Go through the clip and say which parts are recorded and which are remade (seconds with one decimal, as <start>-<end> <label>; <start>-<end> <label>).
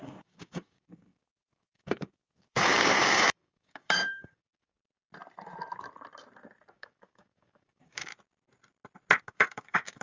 0.0-4.8 remade; 4.8-6.7 recorded; 6.7-8.1 remade; 8.1-9.2 recorded; 9.2-10.0 remade